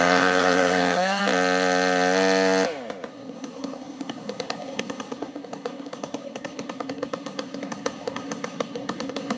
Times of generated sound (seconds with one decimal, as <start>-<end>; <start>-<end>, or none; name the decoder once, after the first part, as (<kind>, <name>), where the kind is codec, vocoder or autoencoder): 0.0-1.2 (codec, SNAC); 3.1-9.4

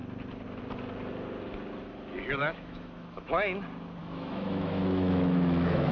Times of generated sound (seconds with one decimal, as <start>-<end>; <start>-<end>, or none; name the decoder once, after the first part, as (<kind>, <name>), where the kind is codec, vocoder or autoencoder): 2.4-3.3 (autoencoder, DAC-VAE); 4.0-5.9

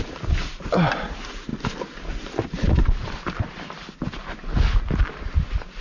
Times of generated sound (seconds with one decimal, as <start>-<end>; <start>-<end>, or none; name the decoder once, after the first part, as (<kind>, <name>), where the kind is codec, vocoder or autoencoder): none

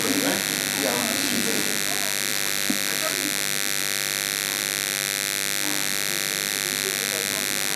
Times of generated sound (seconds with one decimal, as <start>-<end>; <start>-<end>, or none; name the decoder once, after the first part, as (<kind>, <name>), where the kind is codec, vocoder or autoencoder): 2.3-3.1 (vocoder, BigVGAN v2); 3.8-4.6; 5.9-6.5

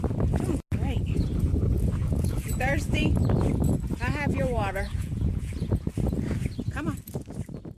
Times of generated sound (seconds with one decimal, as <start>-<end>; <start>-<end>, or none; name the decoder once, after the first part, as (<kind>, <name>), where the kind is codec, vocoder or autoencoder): 2.0-3.1 (vocoder, Vocos); 4.3-5.9

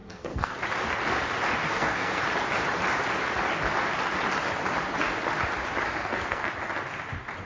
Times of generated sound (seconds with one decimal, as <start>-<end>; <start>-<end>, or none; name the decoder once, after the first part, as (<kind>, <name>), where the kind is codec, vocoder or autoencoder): 0.0-0.6 (codec, SNAC); 1.6-2.2; 6.0-6.5

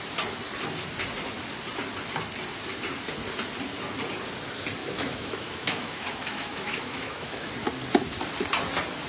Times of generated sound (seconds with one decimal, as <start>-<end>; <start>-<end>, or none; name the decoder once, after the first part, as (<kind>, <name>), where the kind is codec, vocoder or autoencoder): 4.8-7.5 (autoencoder, DAC-VAE)

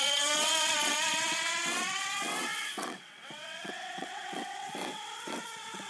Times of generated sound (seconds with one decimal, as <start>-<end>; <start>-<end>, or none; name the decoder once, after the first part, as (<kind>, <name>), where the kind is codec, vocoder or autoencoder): 0.0-5.9 (vocoder, WaveNeXt)